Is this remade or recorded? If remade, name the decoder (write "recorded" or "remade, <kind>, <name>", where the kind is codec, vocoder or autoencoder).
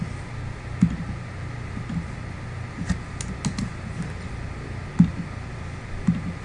recorded